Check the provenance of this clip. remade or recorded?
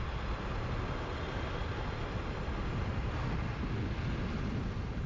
recorded